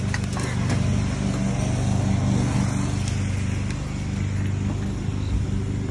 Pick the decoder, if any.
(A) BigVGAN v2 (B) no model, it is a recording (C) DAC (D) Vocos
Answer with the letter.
B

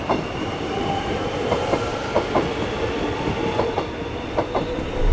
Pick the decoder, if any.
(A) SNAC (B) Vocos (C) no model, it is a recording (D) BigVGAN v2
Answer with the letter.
D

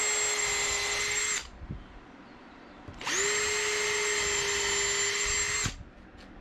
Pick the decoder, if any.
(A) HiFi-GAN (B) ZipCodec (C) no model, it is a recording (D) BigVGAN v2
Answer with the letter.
C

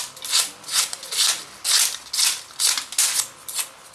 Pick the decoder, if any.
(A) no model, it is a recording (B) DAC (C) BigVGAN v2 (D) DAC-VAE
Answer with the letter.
A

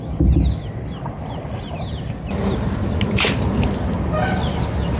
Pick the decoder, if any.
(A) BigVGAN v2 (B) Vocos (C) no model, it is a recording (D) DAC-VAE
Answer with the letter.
C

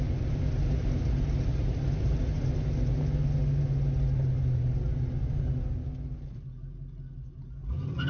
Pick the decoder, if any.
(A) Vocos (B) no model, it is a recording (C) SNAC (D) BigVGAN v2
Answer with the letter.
B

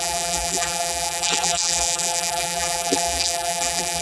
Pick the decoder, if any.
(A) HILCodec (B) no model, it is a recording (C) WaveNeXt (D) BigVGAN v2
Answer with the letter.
D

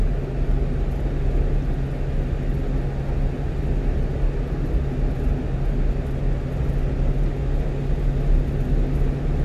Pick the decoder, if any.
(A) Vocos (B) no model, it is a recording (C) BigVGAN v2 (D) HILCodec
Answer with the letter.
B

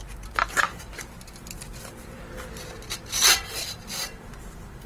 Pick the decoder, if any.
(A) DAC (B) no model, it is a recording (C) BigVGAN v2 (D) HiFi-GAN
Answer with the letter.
C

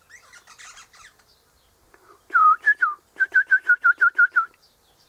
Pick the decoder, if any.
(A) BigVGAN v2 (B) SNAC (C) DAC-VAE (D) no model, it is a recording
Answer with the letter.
A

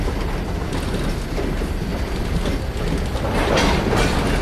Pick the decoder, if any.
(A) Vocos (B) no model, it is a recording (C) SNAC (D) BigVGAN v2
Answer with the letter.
B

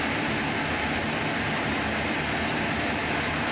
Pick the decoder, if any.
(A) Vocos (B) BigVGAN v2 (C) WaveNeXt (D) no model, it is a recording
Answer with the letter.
D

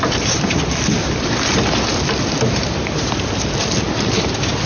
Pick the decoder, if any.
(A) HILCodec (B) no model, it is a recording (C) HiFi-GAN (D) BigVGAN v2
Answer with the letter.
B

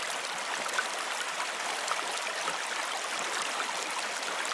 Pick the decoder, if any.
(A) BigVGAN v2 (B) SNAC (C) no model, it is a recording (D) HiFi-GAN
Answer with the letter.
A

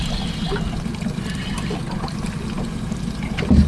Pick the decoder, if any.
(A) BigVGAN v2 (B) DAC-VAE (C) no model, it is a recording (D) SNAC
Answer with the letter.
C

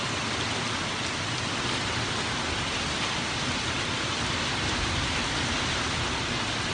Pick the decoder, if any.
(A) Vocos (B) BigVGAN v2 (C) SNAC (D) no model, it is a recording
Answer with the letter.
D